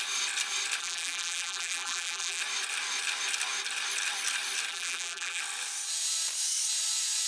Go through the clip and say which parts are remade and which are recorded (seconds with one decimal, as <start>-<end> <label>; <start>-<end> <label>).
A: 0.0-0.8 recorded; 0.8-2.4 remade; 2.4-4.7 recorded; 4.7-5.4 remade; 5.4-7.3 recorded